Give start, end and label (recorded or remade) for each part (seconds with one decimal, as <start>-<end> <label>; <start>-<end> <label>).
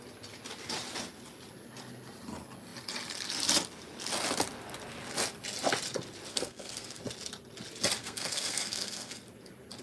0.0-6.3 recorded; 6.3-7.0 remade; 7.0-8.0 recorded; 8.0-9.2 remade; 9.2-9.8 recorded